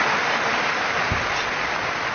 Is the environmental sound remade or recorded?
recorded